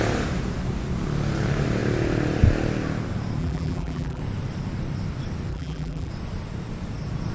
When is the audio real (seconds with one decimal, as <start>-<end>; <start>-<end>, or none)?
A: 0.0-3.4; 4.2-5.5; 6.1-7.3